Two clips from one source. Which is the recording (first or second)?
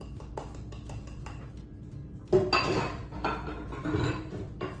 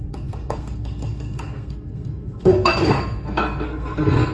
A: first